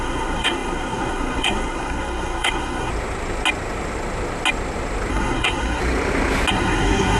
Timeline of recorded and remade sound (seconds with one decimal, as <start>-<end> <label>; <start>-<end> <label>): 0.0-2.9 remade; 2.9-5.1 recorded; 5.1-5.8 remade; 5.8-6.5 recorded; 6.5-7.2 remade